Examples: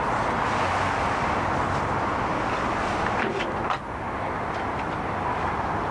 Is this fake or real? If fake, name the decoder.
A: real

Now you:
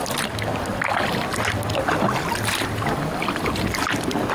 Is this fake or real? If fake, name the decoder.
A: real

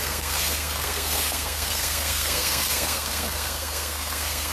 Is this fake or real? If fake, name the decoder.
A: fake, codec, SNAC